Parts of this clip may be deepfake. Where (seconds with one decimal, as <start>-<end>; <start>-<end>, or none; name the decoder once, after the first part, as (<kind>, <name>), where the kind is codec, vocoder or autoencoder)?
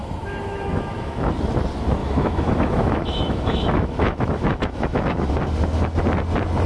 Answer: 0.0-1.3 (autoencoder, DAC-VAE); 2.0-5.3